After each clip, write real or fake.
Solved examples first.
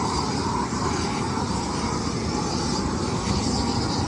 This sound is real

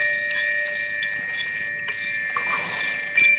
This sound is real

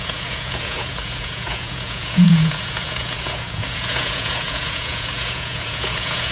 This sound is fake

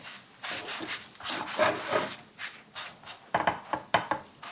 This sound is real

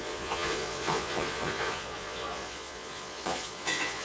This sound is fake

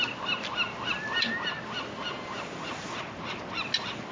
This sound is real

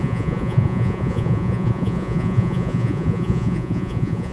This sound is fake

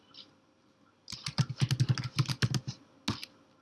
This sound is real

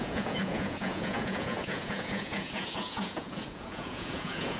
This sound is fake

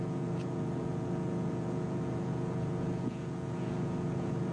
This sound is fake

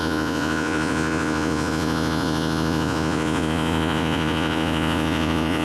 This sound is fake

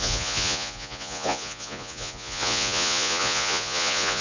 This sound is fake